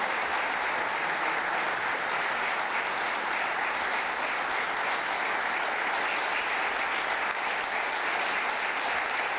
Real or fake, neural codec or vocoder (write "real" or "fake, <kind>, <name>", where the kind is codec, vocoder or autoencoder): real